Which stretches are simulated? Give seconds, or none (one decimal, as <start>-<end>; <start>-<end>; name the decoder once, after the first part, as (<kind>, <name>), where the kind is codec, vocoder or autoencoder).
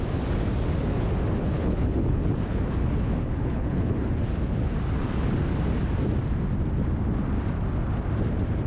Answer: 1.4-4.1 (codec, HILCodec)